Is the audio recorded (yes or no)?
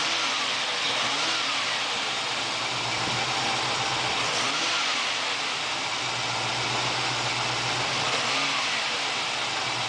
yes